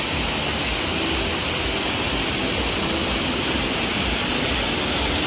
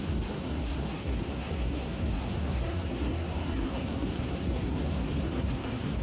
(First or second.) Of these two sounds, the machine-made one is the second